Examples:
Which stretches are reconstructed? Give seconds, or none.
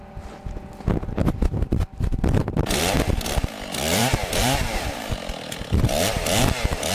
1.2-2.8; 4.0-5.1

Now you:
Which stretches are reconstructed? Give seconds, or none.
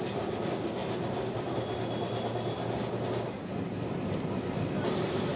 0.8-1.5; 3.4-4.0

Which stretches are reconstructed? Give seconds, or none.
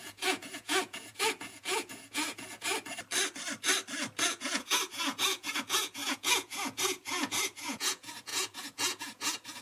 0.0-2.7; 4.2-9.6